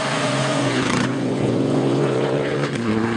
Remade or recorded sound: remade